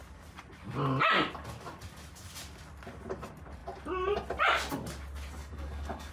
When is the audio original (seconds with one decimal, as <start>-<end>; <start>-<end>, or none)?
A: 0.0-5.4